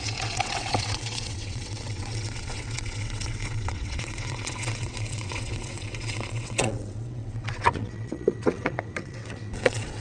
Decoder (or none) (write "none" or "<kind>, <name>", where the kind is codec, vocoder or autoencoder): vocoder, WaveNeXt